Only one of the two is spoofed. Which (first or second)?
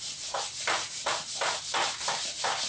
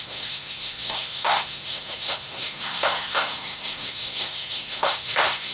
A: second